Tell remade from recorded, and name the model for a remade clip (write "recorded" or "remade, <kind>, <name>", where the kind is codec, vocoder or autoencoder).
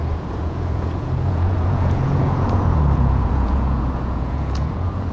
remade, vocoder, Vocos